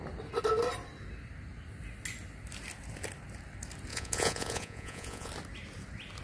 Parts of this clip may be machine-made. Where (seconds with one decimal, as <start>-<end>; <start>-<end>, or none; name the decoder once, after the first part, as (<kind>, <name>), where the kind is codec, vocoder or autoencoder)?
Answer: 3.9-5.3 (vocoder, Vocos)